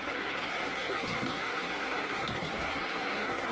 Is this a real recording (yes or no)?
no